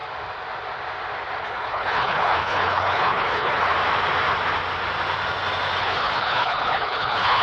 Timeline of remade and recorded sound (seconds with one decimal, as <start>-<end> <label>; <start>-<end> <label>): 0.0-1.4 recorded; 1.4-3.7 remade; 3.7-5.8 recorded; 5.8-7.4 remade